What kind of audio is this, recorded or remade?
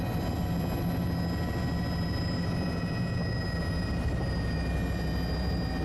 recorded